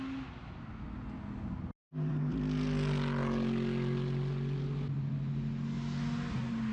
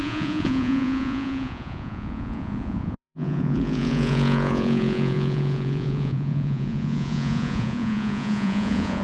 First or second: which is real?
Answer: first